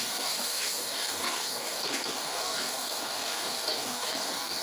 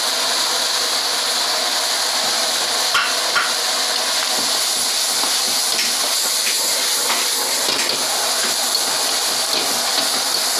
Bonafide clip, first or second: second